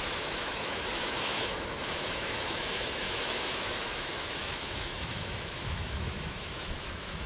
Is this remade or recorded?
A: remade